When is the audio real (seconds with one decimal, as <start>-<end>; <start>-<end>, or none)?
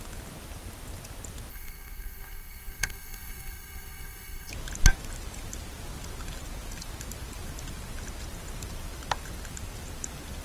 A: 0.0-1.5; 4.5-10.4